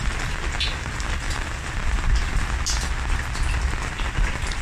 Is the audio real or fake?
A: real